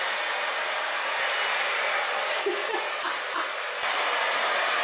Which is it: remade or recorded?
recorded